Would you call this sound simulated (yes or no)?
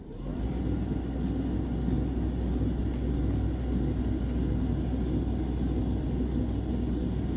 no